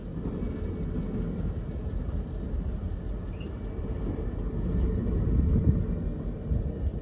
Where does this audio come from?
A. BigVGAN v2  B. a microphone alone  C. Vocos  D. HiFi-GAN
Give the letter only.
B